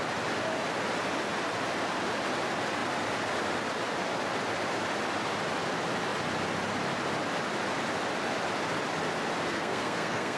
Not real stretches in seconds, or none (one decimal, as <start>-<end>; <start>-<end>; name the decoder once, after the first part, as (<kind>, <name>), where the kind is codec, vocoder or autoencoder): 9.5-10.4 (codec, SNAC)